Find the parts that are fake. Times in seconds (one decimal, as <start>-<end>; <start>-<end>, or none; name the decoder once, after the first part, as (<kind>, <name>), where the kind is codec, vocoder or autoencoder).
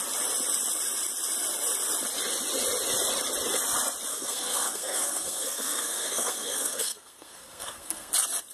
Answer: 4.1-8.1 (codec, SNAC)